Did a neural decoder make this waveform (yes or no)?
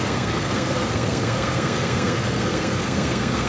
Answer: yes